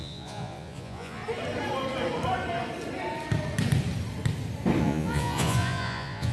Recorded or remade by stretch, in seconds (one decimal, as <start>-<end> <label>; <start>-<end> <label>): 0.0-1.2 remade; 1.2-4.8 recorded; 4.8-6.3 remade